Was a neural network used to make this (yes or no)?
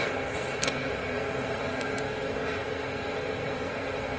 yes